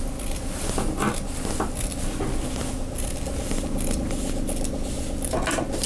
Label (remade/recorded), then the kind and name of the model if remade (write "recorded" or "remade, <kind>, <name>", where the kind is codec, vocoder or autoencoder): recorded